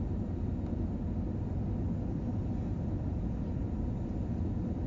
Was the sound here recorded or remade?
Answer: recorded